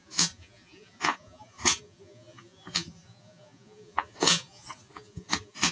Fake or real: fake